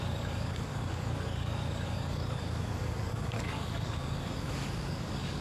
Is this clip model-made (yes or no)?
yes